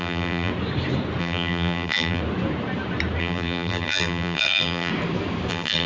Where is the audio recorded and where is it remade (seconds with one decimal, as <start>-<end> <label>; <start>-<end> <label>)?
0.0-0.5 remade; 0.5-1.2 recorded; 1.2-2.2 remade; 2.2-3.2 recorded; 3.2-4.9 remade; 4.9-5.5 recorded; 5.5-5.9 remade